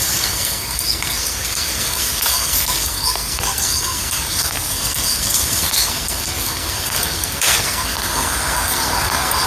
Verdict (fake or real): fake